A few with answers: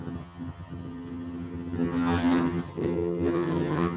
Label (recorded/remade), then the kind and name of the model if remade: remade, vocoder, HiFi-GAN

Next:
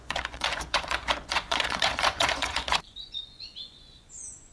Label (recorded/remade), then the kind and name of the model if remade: remade, vocoder, Vocos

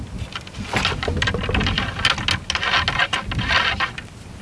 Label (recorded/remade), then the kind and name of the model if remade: recorded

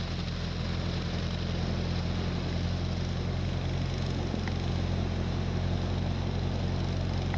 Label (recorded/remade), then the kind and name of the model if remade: recorded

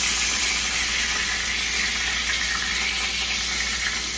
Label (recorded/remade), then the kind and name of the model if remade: recorded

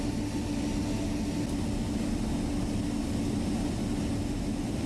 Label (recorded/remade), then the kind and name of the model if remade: recorded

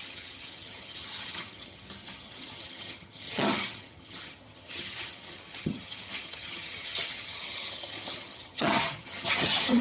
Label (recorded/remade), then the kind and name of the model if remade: remade, vocoder, HiFi-GAN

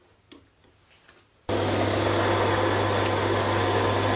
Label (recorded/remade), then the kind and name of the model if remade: recorded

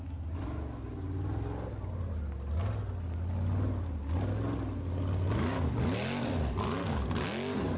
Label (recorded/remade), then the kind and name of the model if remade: recorded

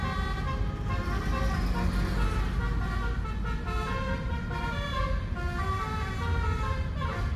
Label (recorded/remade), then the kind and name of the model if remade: recorded